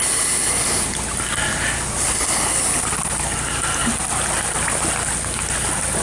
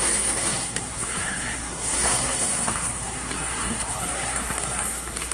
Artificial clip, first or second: second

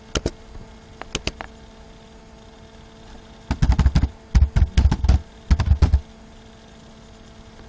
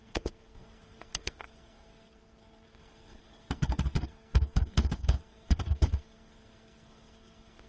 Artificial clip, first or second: second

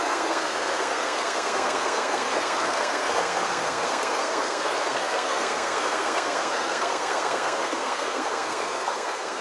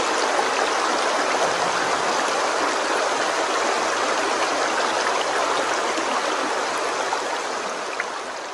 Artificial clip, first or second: first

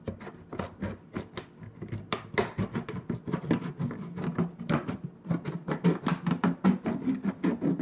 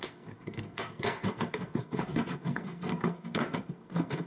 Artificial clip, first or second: second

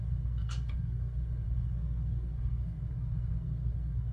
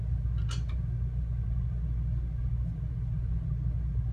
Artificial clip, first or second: first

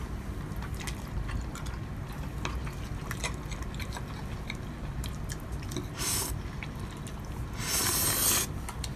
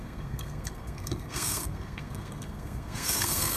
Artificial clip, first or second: second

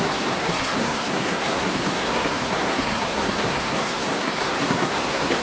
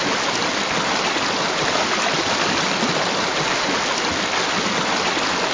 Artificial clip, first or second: first